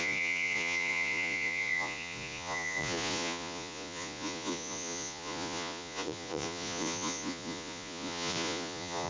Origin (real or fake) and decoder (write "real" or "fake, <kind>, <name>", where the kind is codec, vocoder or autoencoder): fake, vocoder, Vocos